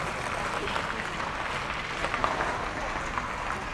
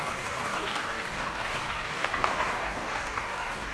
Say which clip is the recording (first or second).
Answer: first